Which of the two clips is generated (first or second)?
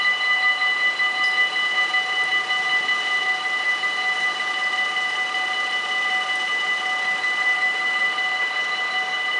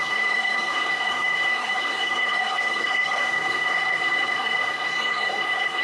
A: second